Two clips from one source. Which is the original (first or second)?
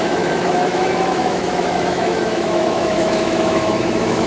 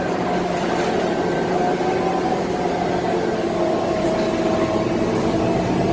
second